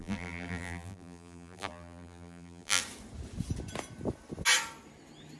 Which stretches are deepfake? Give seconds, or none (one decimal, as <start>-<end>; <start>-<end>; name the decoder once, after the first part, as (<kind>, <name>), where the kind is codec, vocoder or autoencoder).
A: 0.0-2.8 (vocoder, BigVGAN v2)